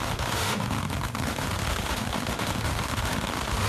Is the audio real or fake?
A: fake